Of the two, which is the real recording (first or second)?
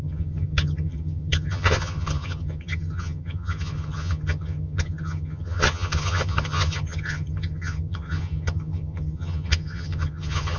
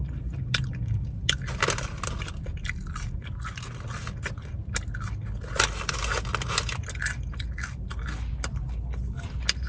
second